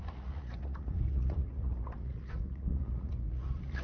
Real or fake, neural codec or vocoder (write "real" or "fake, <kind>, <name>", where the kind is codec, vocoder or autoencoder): fake, vocoder, Vocos